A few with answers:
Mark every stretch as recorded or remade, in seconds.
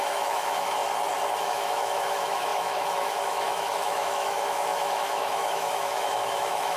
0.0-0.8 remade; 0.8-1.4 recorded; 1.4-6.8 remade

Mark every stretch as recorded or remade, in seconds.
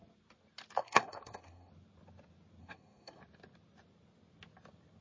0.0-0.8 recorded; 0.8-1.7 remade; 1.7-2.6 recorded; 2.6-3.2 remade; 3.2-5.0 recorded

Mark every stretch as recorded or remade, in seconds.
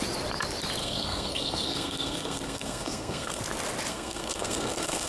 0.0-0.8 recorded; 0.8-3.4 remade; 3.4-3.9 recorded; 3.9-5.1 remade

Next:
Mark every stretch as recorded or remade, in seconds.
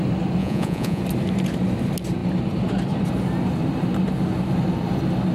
0.0-0.4 recorded; 0.4-1.0 remade; 1.0-5.3 recorded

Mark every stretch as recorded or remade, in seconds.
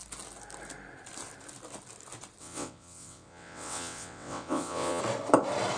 0.0-2.4 recorded; 2.4-5.0 remade; 5.0-5.8 recorded